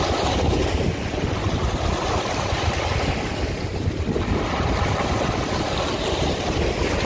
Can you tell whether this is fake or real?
real